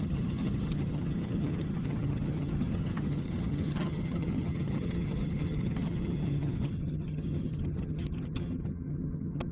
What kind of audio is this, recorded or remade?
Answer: remade